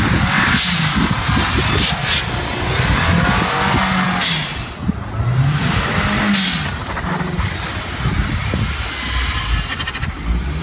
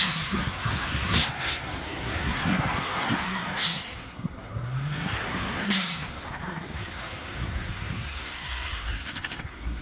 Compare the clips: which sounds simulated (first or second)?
second